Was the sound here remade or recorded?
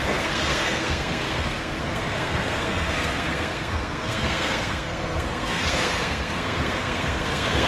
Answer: remade